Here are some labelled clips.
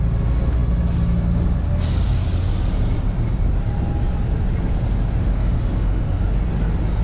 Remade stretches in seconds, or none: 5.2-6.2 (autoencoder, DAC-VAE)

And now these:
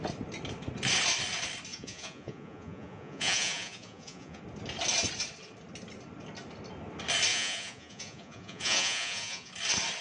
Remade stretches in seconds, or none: 1.7-4.4 (vocoder, Vocos); 7.3-9.5

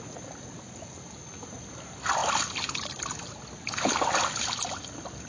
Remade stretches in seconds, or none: none

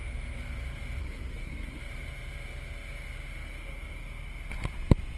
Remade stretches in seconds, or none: 1.0-1.8 (codec, SNAC)

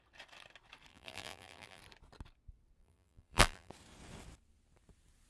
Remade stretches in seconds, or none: 0.9-1.8 (vocoder, BigVGAN v2); 2.8-3.7

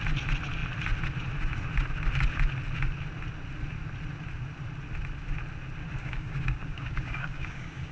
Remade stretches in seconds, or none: 6.0-7.9 (codec, DAC)